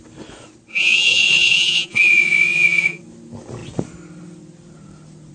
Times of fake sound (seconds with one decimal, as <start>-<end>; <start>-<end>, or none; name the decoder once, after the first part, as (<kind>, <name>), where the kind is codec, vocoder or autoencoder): 0.7-3.0 (vocoder, Vocos)